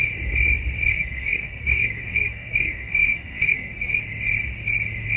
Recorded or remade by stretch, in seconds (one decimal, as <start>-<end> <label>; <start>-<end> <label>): 0.0-0.9 recorded; 0.9-4.0 remade; 4.0-5.2 recorded